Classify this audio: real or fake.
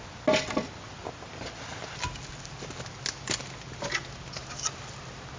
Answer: real